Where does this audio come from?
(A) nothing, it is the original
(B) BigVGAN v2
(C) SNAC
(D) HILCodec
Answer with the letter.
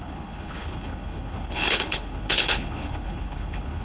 D